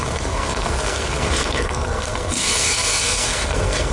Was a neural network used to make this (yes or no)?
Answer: yes